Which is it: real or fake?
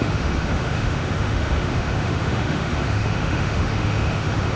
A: fake